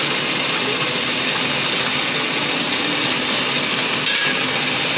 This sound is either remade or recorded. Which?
recorded